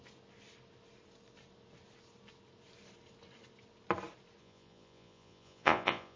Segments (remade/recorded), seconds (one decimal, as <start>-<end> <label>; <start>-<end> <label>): 0.0-4.4 recorded; 4.4-6.2 remade